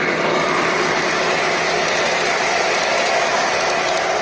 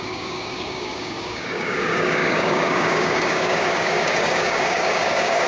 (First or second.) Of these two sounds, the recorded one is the first